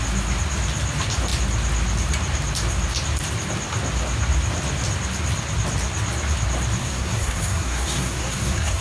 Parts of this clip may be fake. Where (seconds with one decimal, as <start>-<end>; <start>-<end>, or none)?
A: 6.8-8.8